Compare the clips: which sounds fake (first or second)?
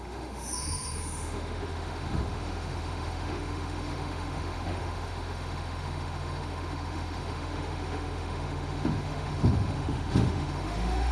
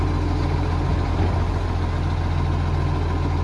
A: first